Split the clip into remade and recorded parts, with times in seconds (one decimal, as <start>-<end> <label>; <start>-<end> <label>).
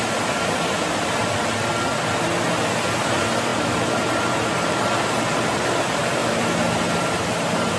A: 0.0-1.2 remade; 1.2-3.0 recorded; 3.0-6.2 remade; 6.2-7.0 recorded; 7.0-7.8 remade